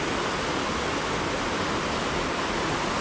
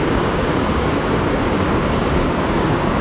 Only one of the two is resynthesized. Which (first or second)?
second